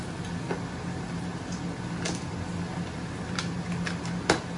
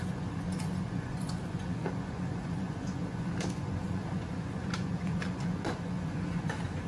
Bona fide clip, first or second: first